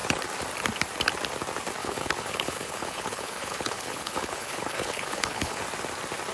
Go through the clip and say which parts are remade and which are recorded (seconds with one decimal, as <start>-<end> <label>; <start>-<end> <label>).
0.0-1.8 recorded; 1.8-5.6 remade; 5.6-6.3 recorded